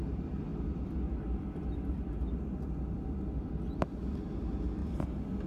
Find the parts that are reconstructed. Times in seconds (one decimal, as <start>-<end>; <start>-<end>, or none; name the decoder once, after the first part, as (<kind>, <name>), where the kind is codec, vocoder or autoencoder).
none